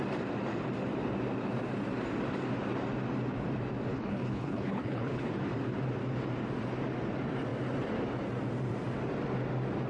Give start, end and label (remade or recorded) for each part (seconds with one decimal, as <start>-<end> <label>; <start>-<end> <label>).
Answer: 0.0-3.9 recorded; 3.9-5.3 remade; 5.3-9.9 recorded